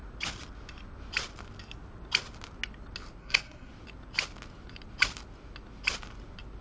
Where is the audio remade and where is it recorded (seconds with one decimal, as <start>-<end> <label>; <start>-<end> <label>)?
0.0-3.2 recorded; 3.2-3.7 remade; 3.7-6.6 recorded